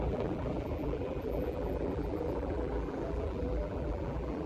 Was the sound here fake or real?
fake